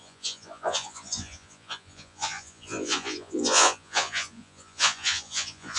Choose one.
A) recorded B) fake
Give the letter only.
B